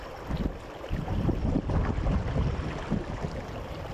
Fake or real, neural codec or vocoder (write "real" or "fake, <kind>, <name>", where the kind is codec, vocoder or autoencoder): real